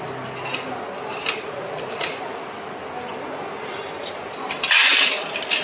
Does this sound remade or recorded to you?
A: recorded